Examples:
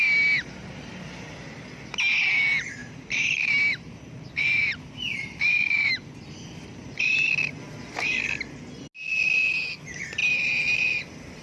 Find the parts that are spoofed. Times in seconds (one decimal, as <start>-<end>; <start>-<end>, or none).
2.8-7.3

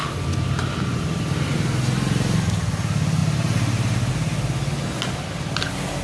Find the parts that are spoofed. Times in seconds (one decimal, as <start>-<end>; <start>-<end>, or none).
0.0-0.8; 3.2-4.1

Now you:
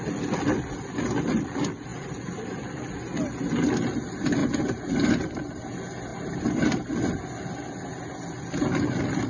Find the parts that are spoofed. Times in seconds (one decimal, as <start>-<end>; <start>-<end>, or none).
4.4-5.6; 6.1-6.9

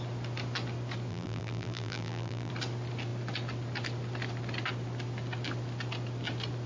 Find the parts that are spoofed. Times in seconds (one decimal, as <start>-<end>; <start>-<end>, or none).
1.1-2.5

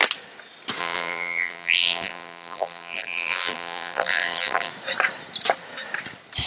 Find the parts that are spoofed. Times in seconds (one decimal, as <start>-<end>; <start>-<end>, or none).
0.8-4.7